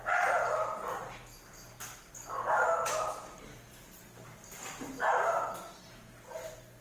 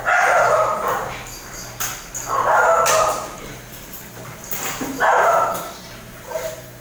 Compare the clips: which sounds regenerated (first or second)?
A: second